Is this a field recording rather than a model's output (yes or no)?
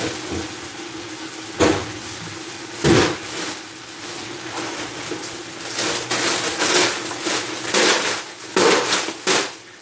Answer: yes